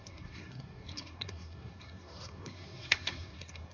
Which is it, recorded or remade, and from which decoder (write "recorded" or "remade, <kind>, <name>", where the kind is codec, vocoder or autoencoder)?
remade, codec, SNAC